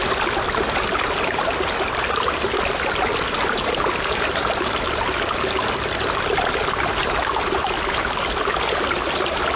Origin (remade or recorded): recorded